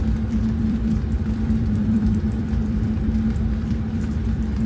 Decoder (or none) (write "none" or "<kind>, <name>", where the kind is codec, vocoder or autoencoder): vocoder, BigVGAN v2